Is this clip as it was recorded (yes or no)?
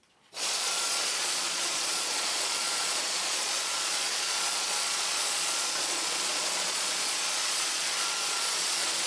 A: no